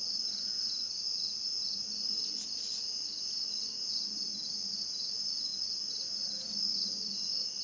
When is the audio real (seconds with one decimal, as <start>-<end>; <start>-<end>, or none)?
0.0-7.6